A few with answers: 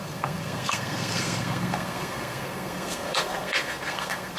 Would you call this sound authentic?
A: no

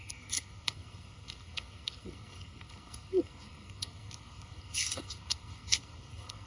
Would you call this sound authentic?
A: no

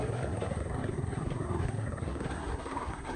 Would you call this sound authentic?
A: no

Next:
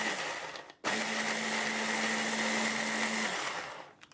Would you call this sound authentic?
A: yes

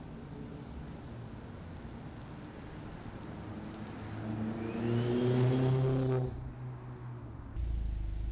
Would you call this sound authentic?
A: yes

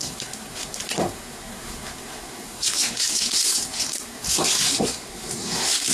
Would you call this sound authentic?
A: no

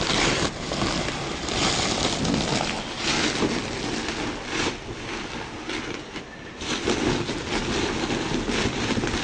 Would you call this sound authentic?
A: yes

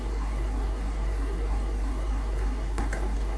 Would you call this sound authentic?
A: no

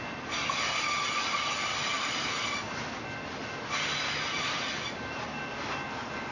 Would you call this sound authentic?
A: yes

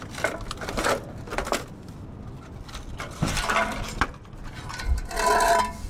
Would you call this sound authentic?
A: yes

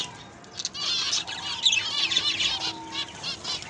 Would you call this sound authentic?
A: yes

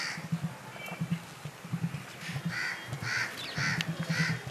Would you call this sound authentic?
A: yes